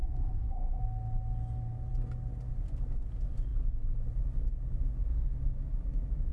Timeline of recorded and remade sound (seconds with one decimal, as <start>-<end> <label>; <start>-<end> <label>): 0.0-0.8 remade; 0.8-6.3 recorded